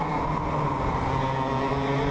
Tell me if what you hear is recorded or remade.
recorded